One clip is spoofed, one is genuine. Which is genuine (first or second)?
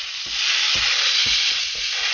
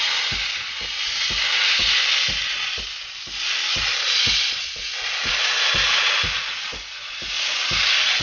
second